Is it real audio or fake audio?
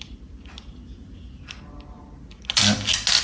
real